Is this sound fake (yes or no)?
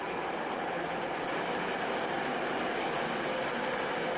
no